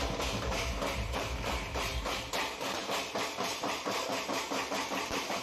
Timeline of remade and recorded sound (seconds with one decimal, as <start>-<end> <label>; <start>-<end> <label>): 0.0-2.8 recorded; 2.8-4.1 remade; 4.1-5.4 recorded